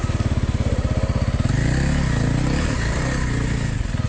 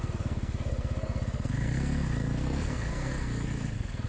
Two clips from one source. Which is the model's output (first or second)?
second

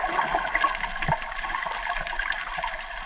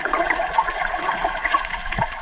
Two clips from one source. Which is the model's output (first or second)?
second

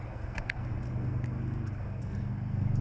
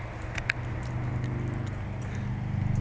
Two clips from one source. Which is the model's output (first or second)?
first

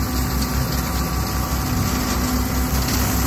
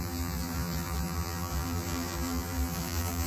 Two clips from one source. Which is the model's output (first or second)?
second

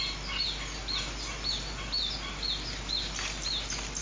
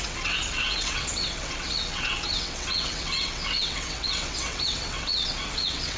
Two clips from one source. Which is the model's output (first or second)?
second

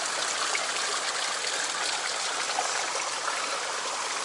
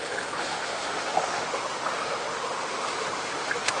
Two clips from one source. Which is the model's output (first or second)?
second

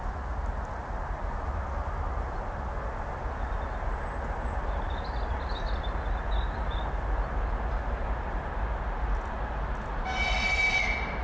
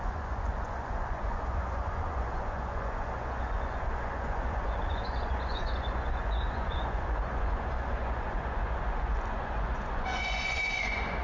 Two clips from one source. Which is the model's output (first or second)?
second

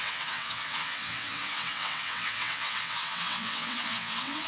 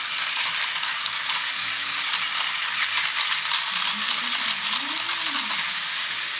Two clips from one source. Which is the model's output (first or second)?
first